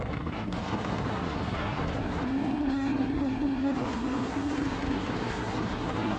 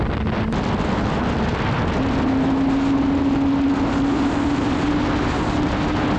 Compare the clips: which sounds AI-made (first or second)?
first